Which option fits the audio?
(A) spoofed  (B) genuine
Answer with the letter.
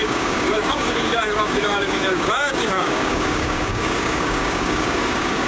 A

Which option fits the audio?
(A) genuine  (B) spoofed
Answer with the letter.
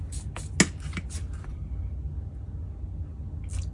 A